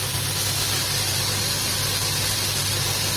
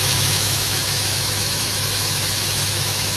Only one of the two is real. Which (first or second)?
first